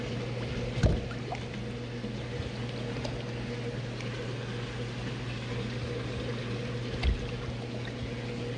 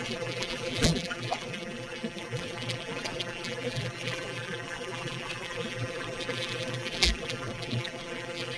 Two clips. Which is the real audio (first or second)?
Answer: first